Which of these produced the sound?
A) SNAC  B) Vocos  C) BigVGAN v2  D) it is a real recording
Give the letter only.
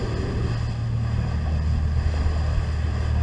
D